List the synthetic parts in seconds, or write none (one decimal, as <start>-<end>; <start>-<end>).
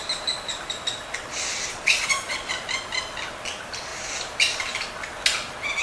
1.7-2.5